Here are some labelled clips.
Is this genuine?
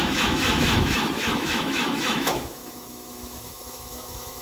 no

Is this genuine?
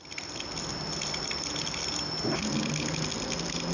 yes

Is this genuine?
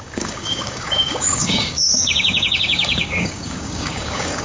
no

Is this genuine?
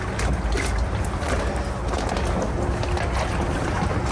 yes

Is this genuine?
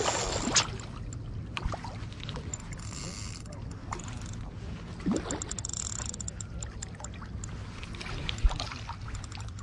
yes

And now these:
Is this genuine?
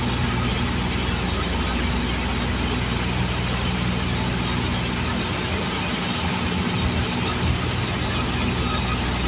yes